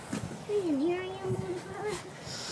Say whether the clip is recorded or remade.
recorded